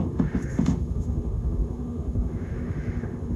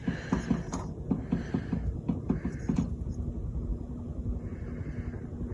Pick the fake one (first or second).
first